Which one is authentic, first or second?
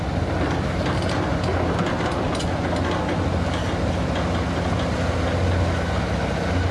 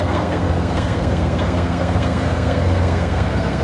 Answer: first